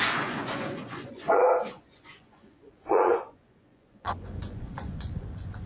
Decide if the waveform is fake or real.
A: fake